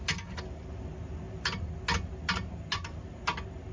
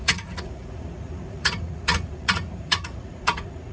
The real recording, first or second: first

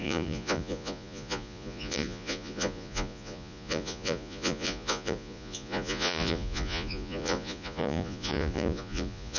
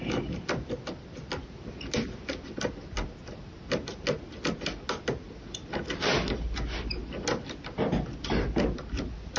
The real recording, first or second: second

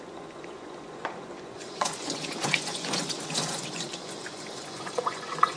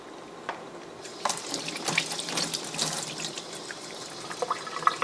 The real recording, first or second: second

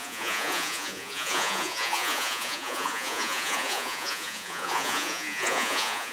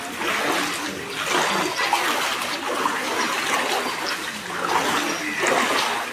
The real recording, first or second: second